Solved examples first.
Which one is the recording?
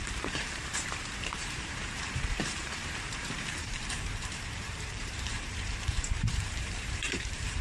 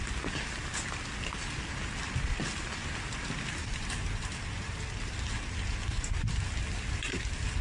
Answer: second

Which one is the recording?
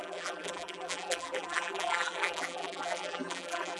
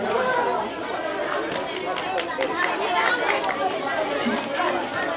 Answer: second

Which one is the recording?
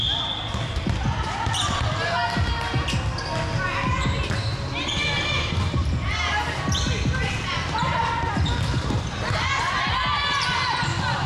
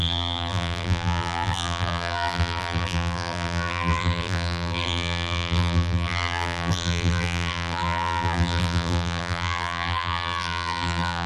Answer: first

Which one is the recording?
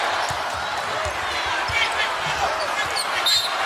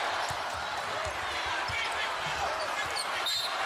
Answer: first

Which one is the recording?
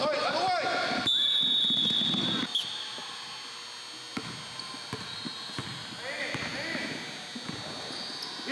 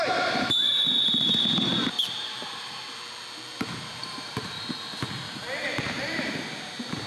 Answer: first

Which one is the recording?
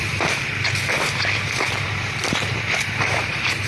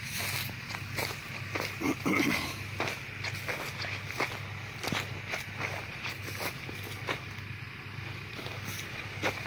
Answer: second